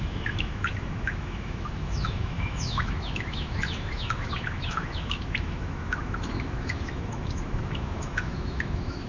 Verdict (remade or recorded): remade